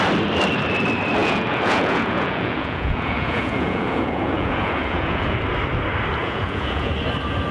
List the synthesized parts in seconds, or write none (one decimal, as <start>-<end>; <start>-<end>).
1.2-5.4; 6.2-6.9